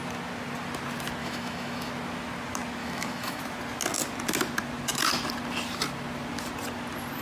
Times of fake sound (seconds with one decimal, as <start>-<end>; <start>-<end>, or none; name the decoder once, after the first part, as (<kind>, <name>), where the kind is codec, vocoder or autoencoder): 1.2-1.9 (autoencoder, DAC-VAE); 2.8-3.4